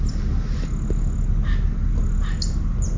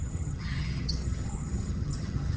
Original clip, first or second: first